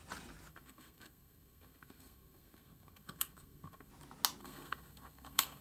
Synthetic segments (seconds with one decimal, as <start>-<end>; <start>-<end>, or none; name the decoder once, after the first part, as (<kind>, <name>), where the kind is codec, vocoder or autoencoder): 0.5-3.9 (codec, SNAC); 4.4-5.6

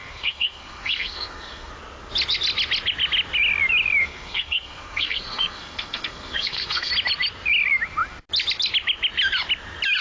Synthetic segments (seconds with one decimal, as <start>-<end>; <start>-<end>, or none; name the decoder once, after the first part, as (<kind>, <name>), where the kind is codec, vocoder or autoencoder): 0.0-1.7 (codec, SNAC); 4.0-6.9

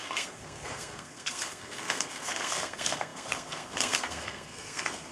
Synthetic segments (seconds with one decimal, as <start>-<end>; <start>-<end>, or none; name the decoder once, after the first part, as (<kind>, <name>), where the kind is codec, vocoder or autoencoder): 0.0-5.1 (codec, SNAC)

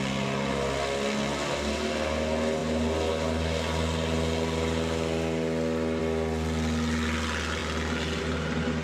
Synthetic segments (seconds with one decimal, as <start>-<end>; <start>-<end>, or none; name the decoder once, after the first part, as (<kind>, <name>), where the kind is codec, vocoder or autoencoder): none

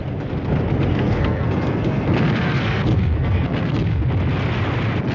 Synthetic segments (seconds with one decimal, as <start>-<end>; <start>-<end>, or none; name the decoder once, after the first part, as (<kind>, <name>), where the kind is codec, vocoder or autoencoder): 0.9-4.0 (codec, SNAC)